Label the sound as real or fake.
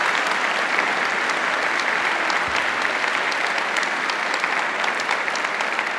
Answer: real